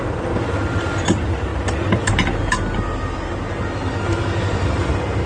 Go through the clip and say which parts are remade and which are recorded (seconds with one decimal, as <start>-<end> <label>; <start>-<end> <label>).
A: 0.0-5.3 recorded